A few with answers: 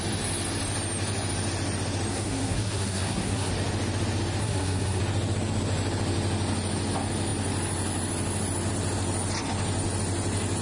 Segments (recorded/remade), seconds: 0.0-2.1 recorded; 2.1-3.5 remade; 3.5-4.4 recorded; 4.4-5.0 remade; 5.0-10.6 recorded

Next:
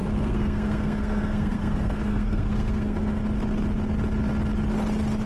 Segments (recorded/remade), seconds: 0.0-3.2 remade; 3.2-5.3 recorded